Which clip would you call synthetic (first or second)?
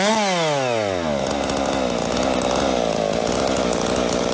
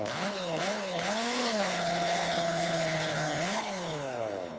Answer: second